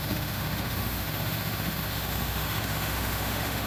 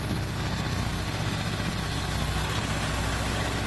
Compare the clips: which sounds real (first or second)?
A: second